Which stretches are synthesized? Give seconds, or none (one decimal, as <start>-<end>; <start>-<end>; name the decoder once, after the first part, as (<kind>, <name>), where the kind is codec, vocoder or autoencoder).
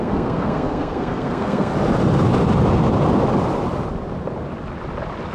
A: 0.0-1.7 (codec, SNAC)